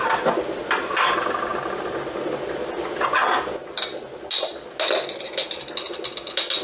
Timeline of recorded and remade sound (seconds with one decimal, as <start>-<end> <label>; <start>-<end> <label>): 0.0-6.6 recorded